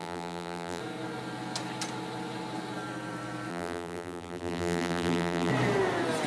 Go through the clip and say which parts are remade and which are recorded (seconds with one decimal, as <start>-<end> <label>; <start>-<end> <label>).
0.0-0.8 remade; 0.8-3.5 recorded; 3.5-5.5 remade; 5.5-6.3 recorded